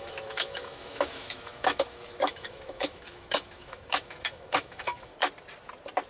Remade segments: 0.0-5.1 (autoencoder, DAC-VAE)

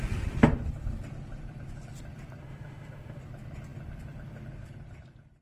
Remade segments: 2.4-3.2 (autoencoder, DAC-VAE)

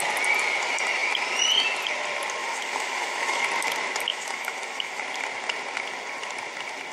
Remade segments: 2.4-3.4 (autoencoder, DAC-VAE); 4.1-5.0

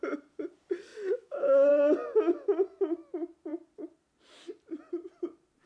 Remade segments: 0.9-1.7 (autoencoder, DAC-VAE)